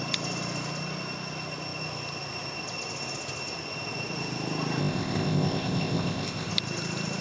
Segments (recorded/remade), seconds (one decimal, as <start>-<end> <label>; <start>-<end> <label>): 0.0-4.8 recorded; 4.8-6.5 remade; 6.5-7.2 recorded